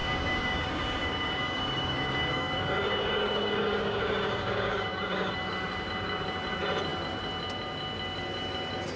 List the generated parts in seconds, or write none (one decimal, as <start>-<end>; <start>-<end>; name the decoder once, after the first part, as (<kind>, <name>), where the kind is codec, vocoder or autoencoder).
0.0-5.3 (codec, DAC)